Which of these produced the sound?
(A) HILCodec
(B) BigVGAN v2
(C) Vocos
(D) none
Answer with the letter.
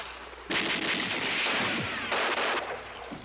D